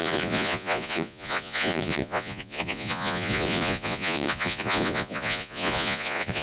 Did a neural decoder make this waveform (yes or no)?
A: yes